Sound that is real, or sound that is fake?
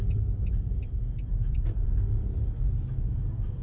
real